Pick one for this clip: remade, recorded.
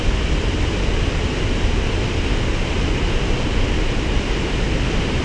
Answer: recorded